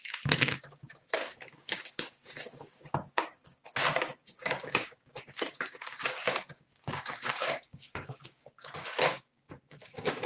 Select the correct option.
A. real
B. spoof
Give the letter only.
B